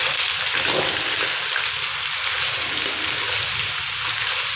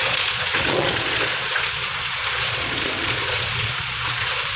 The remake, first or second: second